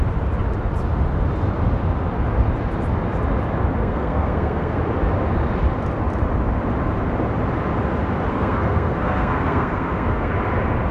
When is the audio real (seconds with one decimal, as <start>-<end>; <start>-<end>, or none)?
0.0-3.8; 4.8-8.3; 10.3-10.9